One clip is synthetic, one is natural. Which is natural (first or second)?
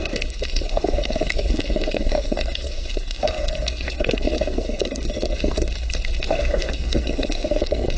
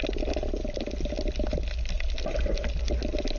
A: second